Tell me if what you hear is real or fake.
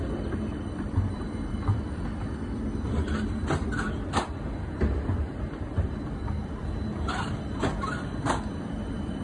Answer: fake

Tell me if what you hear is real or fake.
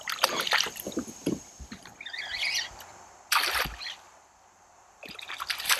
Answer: fake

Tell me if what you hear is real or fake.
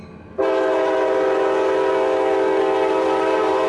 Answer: real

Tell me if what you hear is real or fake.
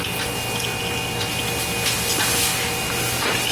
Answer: real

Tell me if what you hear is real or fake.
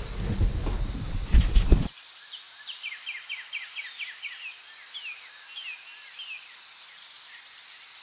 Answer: real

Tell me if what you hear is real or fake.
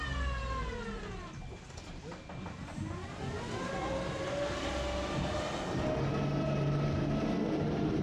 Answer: real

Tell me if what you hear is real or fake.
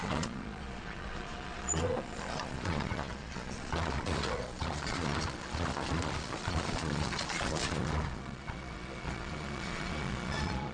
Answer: fake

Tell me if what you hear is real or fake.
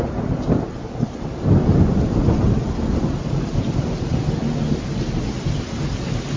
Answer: real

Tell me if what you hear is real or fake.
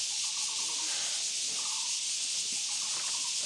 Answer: real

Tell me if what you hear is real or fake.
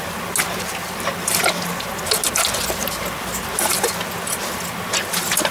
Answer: real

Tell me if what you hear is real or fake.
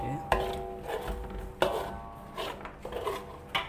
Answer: real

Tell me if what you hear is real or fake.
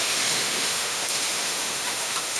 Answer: fake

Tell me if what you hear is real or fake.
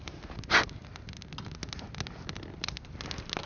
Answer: real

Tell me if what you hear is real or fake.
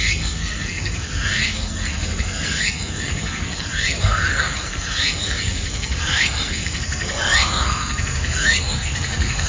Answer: fake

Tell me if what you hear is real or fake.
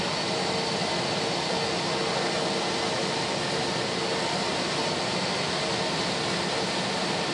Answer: real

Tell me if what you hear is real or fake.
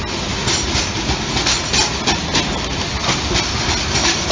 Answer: real